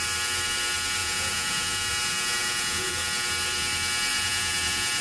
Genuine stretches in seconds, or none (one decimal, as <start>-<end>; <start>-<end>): 0.0-1.0; 2.9-4.1